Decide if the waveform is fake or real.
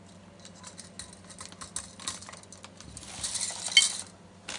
real